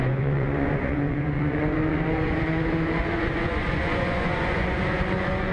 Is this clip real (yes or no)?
no